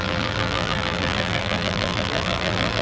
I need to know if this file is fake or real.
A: fake